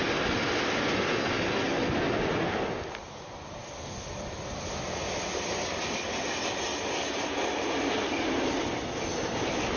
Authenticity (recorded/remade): recorded